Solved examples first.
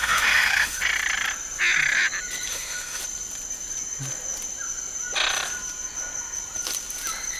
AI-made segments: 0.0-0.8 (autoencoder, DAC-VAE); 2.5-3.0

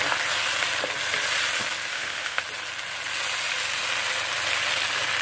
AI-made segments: 1.9-2.4 (autoencoder, DAC-VAE)

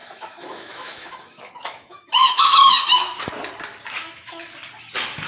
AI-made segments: 0.0-3.2 (autoencoder, DAC-VAE); 4.0-4.5

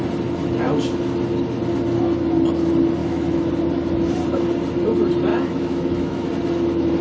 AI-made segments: 3.0-3.5 (autoencoder, DAC-VAE); 5.3-6.3

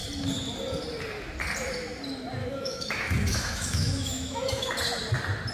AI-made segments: 2.4-4.7 (autoencoder, DAC-VAE)